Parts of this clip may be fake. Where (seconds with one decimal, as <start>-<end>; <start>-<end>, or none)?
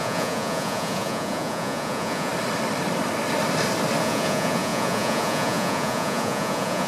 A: 0.0-2.3; 4.0-6.9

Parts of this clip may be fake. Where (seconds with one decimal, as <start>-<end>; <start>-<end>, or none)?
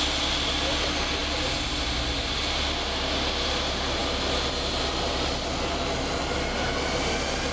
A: none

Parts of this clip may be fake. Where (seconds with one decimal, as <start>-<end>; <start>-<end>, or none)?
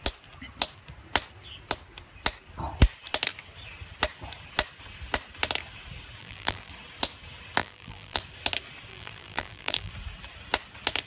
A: 6.2-6.7; 7.6-8.2; 8.9-9.9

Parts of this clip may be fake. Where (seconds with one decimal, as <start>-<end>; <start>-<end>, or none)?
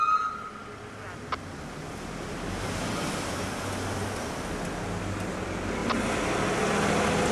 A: none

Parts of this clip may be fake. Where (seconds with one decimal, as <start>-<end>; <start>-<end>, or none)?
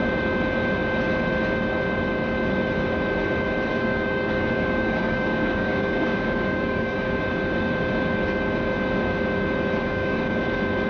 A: 3.7-7.2; 9.8-10.4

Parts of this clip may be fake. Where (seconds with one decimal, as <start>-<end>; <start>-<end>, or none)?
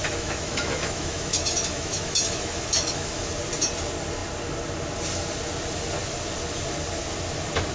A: 0.0-3.3